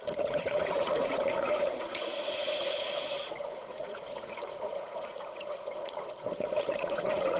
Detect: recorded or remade remade